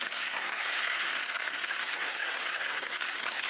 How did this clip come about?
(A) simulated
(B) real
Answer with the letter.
A